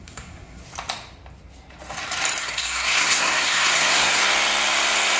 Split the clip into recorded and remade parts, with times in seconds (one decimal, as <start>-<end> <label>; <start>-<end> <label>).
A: 0.0-0.6 remade; 0.6-2.4 recorded; 2.4-4.2 remade; 4.2-5.2 recorded